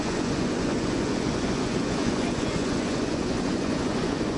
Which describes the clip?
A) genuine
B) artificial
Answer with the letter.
B